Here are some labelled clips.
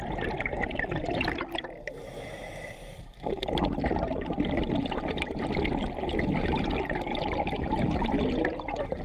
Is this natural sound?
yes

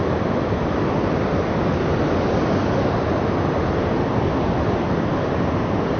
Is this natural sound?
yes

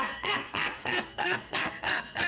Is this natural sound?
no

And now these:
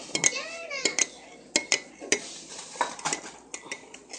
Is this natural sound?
yes